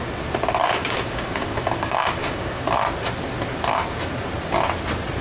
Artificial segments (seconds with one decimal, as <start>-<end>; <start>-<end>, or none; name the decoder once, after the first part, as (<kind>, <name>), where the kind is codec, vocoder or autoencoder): 0.6-2.6 (codec, DAC)